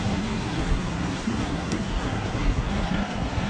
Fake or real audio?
fake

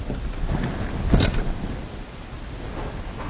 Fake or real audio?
real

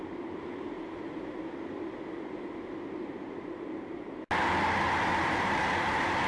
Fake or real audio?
real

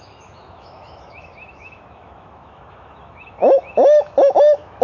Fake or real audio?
fake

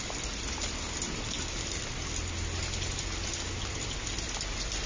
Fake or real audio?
real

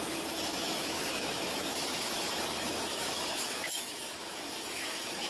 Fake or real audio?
fake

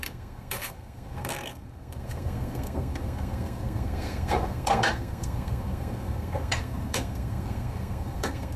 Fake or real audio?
fake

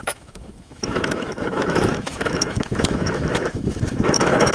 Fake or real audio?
fake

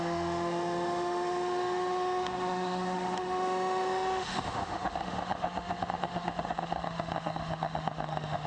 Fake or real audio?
fake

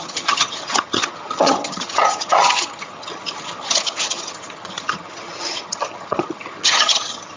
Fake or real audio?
fake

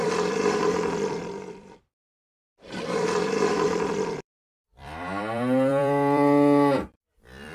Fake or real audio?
fake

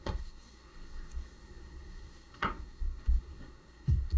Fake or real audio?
fake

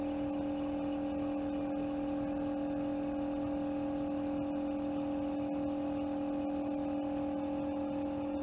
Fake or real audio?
real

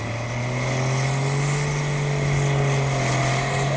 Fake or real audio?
real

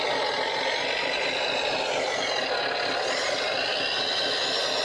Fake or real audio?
real